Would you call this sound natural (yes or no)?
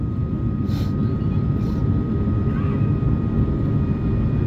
yes